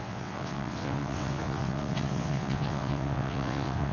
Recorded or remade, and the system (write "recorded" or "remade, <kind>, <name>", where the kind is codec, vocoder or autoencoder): remade, vocoder, WaveNeXt